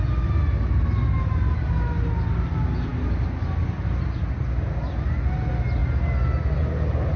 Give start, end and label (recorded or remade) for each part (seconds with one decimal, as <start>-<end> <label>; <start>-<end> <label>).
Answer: 0.0-7.2 recorded